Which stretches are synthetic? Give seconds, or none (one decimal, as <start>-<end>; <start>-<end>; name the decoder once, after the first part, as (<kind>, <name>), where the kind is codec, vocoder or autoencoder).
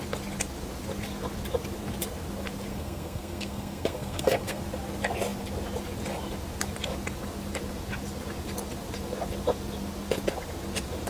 2.7-4.6 (codec, SNAC)